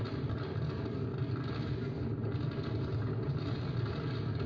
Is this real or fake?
real